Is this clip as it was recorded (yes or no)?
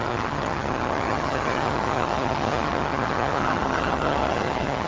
no